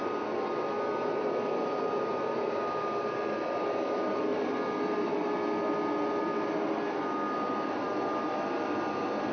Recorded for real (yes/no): yes